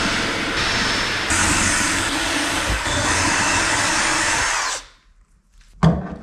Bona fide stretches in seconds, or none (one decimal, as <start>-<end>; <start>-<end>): 0.0-1.4; 4.4-6.2